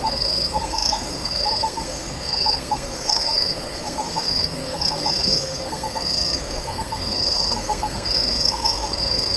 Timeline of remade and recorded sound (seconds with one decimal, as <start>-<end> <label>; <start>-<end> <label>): 0.0-9.4 remade